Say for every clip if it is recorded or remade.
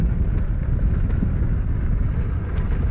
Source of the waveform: recorded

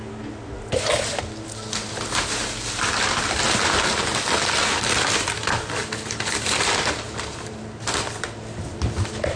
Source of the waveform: recorded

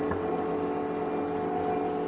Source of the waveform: recorded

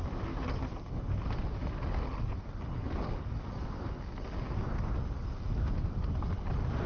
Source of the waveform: recorded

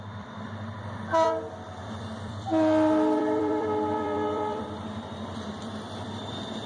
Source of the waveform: remade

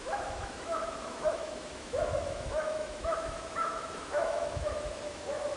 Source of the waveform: remade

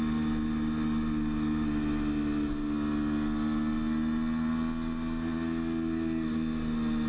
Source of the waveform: recorded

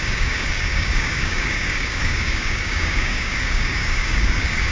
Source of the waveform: remade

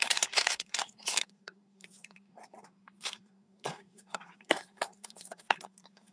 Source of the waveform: remade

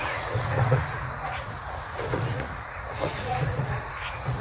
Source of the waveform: remade